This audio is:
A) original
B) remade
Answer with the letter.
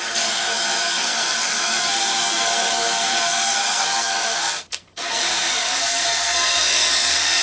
B